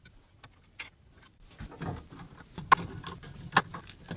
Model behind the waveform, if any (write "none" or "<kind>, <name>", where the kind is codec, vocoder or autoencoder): none